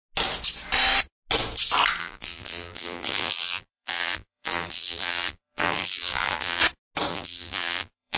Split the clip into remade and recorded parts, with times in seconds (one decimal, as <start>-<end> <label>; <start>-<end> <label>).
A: 0.0-2.0 recorded; 2.0-6.6 remade; 6.6-7.1 recorded; 7.1-8.2 remade